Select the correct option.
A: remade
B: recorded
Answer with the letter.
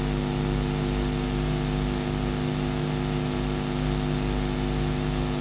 B